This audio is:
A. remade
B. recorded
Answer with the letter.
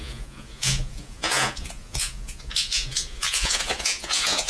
A